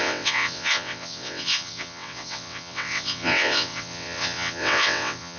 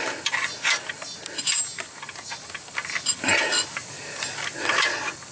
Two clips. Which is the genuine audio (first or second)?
second